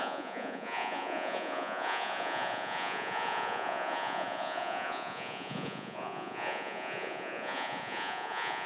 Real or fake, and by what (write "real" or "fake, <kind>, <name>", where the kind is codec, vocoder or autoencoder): fake, vocoder, Vocos